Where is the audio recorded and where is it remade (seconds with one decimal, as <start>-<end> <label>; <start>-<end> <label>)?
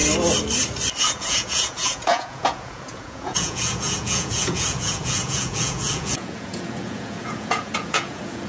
0.0-1.0 recorded; 1.0-8.5 remade